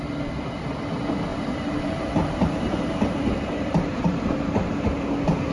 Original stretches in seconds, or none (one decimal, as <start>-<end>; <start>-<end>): 0.0-1.3; 4.2-5.5